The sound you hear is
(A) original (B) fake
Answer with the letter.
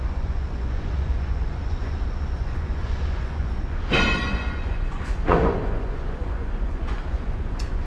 B